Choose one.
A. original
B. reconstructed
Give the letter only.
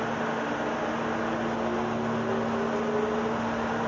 A